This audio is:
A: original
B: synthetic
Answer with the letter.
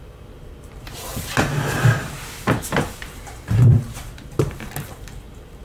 B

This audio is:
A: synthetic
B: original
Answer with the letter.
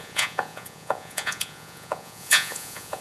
A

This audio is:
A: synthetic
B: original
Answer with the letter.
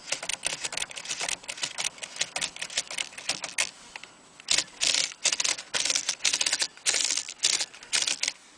B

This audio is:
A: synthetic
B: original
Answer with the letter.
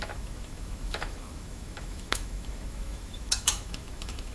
A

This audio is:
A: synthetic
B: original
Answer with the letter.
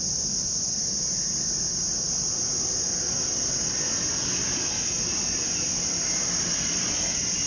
B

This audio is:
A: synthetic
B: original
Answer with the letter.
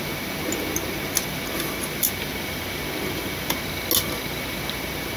B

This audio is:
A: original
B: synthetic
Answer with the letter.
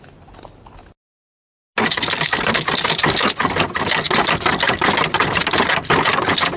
A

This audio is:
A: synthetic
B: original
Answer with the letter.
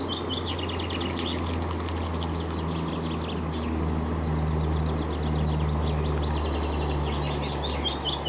B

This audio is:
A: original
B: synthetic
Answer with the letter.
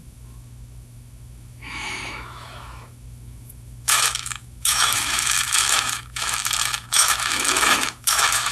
B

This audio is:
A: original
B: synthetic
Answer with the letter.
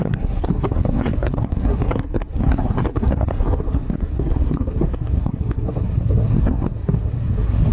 B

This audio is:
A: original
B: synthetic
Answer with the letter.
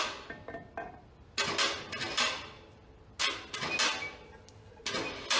A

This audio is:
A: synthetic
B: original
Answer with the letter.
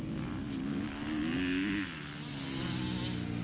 B